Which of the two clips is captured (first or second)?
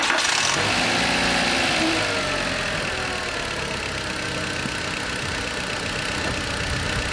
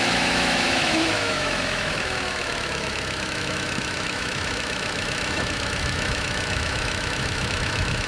first